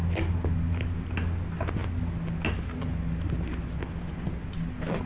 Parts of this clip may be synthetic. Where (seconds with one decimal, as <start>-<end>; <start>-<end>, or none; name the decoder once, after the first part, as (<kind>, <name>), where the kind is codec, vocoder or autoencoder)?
none